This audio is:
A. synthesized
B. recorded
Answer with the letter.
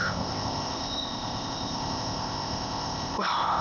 A